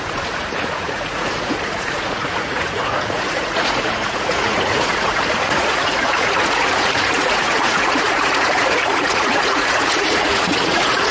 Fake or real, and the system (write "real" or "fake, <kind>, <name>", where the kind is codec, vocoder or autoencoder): fake, vocoder, Vocos